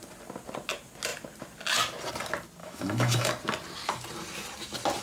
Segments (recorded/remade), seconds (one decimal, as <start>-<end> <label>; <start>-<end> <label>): 0.0-2.6 recorded; 2.6-3.3 remade; 3.3-5.0 recorded